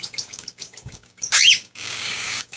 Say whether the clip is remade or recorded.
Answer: remade